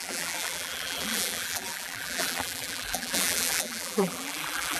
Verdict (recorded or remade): remade